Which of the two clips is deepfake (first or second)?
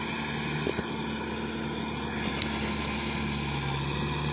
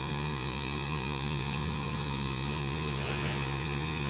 second